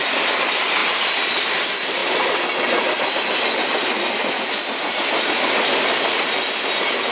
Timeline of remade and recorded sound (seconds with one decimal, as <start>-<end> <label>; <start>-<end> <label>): 0.0-7.1 recorded